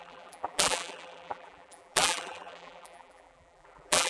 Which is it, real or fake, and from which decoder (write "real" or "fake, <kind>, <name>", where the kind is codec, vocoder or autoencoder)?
fake, vocoder, BigVGAN v2